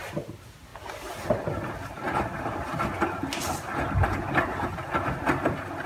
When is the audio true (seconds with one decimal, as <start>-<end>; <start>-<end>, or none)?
0.0-5.9